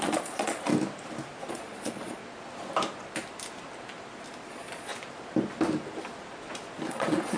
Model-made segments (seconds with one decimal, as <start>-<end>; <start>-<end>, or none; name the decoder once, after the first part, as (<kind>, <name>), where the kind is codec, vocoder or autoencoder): 0.0-0.7 (vocoder, Vocos); 1.5-2.2; 4.5-4.9; 6.9-7.4